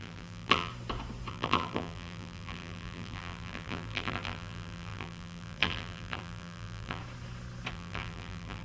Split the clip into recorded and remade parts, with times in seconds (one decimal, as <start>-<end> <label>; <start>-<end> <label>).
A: 0.0-0.7 remade; 0.7-1.3 recorded; 1.3-7.0 remade; 7.0-7.7 recorded; 7.7-8.6 remade